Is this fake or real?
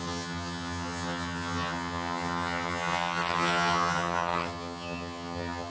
fake